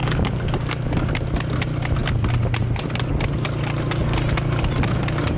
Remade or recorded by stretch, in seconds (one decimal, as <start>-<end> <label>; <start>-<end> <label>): 0.0-1.1 remade; 1.1-5.4 recorded